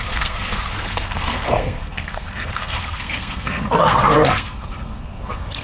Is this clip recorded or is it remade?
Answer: remade